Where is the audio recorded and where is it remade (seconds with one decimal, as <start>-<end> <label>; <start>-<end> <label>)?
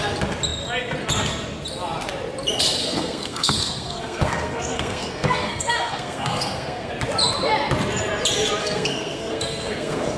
0.0-2.8 recorded; 2.8-6.9 remade; 6.9-8.6 recorded; 8.6-10.2 remade